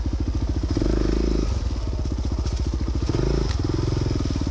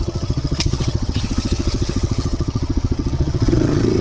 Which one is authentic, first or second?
first